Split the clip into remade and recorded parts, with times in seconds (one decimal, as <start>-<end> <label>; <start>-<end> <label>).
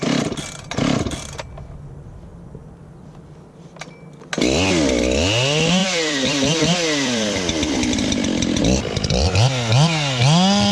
0.0-5.8 recorded; 5.8-8.6 remade; 8.6-10.7 recorded